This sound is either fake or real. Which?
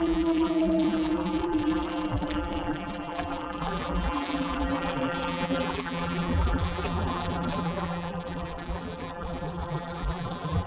fake